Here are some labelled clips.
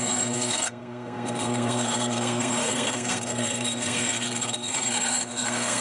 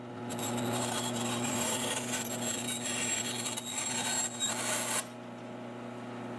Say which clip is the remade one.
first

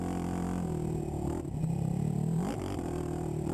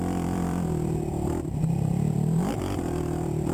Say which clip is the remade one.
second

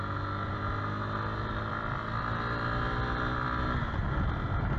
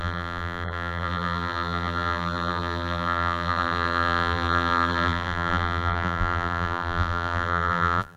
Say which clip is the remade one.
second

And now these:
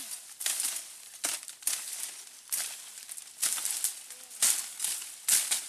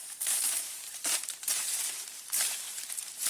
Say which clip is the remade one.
second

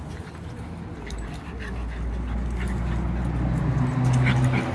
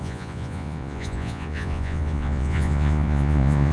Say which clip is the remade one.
second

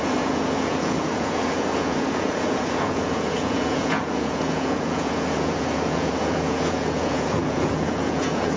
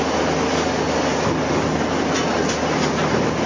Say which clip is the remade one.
first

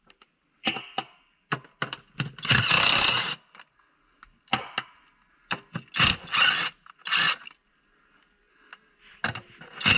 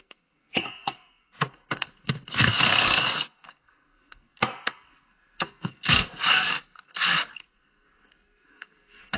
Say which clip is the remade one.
second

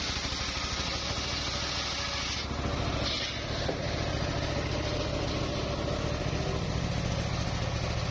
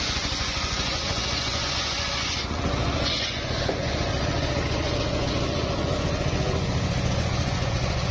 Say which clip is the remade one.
second